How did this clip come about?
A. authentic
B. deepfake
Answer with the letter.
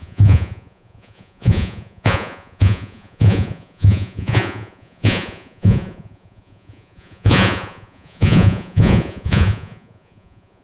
B